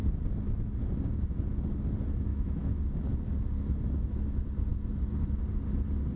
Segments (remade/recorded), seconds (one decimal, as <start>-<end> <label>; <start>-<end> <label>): 0.0-2.3 recorded; 2.3-2.8 remade; 2.8-6.2 recorded